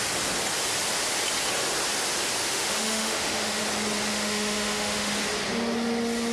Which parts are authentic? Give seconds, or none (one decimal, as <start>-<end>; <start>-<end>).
0.0-2.4; 3.6-4.1; 5.1-6.3